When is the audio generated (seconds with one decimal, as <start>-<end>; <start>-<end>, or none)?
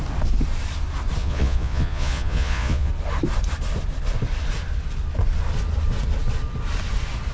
1.2-2.9